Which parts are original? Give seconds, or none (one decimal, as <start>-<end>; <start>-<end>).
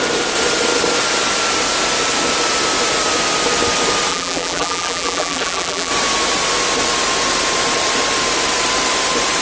0.0-4.1; 5.9-9.4